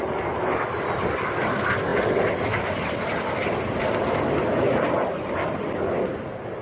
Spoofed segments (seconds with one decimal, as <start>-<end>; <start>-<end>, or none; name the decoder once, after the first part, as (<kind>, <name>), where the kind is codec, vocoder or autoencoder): none